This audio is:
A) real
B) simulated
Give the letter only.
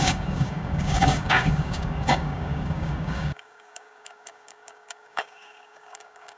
B